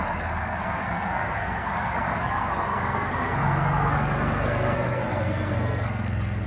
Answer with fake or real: fake